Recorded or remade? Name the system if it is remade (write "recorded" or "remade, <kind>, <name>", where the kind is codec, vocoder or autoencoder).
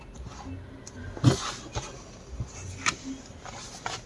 recorded